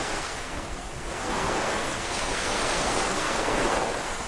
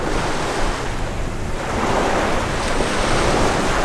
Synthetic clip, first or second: first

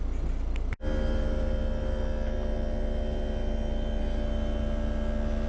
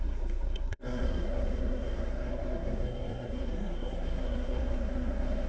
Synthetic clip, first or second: second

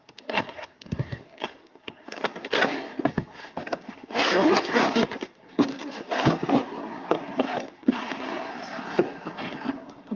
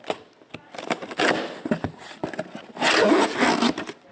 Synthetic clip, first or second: first